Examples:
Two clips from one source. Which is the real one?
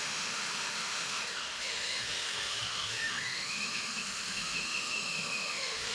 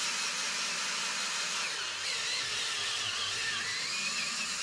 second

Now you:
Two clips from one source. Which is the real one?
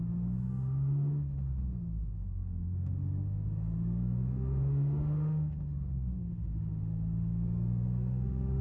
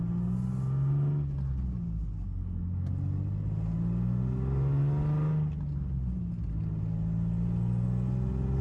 second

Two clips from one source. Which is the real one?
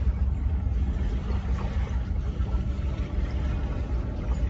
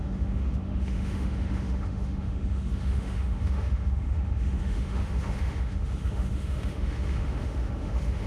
first